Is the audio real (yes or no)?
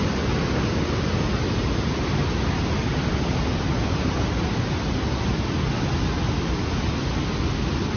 yes